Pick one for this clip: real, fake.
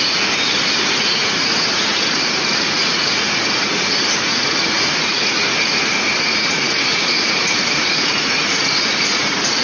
fake